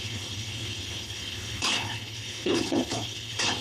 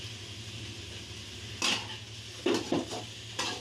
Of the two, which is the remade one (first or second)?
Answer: first